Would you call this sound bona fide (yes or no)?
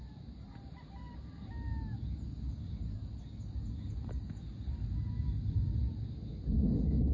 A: yes